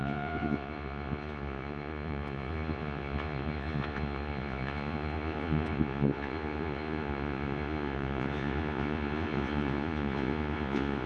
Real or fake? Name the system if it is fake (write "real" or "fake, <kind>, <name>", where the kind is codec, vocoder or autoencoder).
fake, vocoder, Vocos